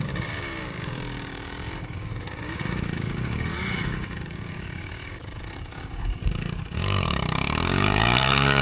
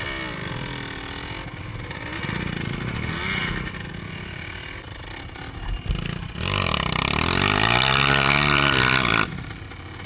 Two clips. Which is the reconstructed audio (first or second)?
first